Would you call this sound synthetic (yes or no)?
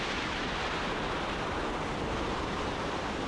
no